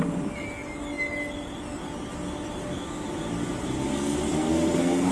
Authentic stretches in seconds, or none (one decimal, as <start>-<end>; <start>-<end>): 0.0-3.9